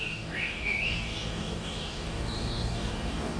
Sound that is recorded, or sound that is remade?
remade